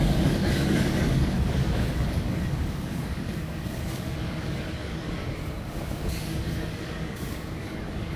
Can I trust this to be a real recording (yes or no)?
no